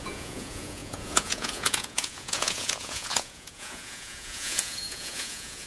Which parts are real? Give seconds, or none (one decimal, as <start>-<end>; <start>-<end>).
none